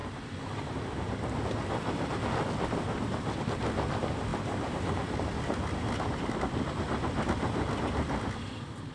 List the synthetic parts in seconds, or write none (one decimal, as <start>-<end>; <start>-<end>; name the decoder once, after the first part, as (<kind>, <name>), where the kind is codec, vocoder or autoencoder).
none